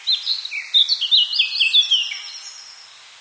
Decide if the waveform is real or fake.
real